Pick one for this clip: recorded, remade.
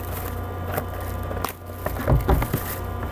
recorded